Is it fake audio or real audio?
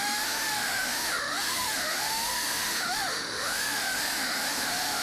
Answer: fake